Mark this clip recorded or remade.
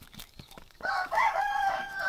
remade